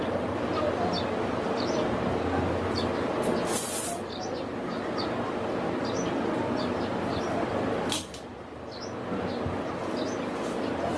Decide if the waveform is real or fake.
real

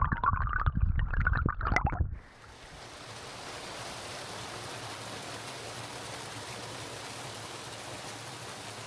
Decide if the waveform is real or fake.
real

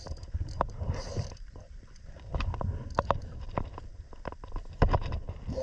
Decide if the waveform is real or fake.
fake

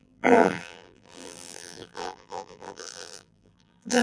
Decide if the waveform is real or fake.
fake